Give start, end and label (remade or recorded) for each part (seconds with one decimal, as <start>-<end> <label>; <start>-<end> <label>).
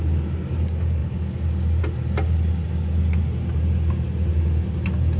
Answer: 0.0-5.2 recorded